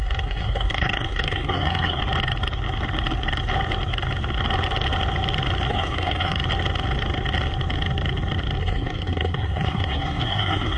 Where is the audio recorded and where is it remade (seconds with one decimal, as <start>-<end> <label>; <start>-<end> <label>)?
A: 0.0-2.0 remade; 2.0-5.7 recorded; 5.7-6.4 remade; 6.4-8.6 recorded; 8.6-10.8 remade